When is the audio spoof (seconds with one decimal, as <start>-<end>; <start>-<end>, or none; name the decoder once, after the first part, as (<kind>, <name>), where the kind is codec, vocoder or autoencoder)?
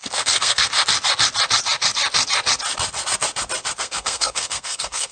0.0-0.7 (codec, SNAC); 3.8-5.1